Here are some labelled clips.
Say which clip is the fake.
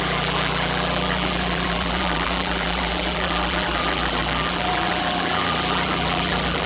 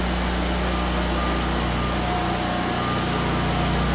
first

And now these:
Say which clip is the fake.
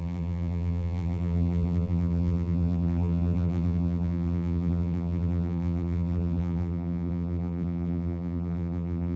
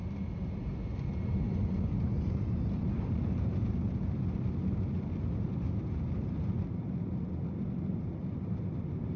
first